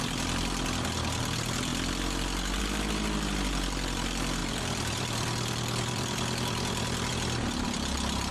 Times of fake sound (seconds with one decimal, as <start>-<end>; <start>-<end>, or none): 4.4-7.1